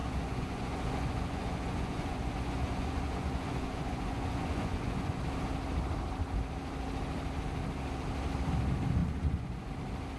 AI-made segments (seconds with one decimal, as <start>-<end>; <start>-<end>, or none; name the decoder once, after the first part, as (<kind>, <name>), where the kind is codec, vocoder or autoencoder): 0.0-5.2 (vocoder, Vocos); 9.0-9.7